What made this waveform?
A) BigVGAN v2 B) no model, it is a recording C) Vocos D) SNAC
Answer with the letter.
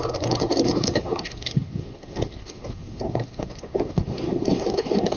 D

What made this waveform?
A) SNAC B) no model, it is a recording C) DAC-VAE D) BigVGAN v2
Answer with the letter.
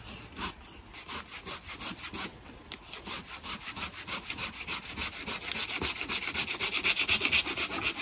B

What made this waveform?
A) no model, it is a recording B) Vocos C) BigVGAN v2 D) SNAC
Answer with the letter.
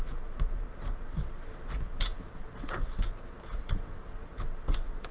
A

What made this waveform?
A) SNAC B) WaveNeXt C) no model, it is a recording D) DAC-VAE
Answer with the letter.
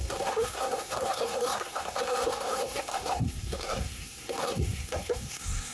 A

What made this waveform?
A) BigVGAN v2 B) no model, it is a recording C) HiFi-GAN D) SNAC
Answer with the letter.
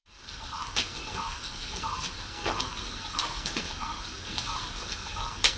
D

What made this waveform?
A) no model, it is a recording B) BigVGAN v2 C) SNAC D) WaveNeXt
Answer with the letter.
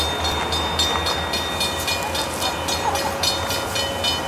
A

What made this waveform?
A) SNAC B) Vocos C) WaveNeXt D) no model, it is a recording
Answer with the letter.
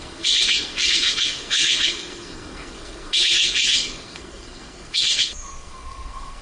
A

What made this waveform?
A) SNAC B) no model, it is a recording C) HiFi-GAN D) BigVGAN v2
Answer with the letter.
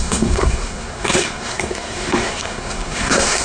A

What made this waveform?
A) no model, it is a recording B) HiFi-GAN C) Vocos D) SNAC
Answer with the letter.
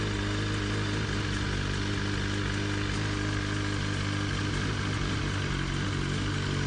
A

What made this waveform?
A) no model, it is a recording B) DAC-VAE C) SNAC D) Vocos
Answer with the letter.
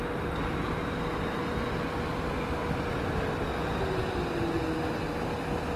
A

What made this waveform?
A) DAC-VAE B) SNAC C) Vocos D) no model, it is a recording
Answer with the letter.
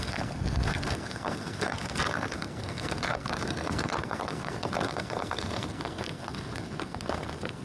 B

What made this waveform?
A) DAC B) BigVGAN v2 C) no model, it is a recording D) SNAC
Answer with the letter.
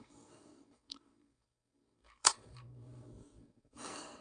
D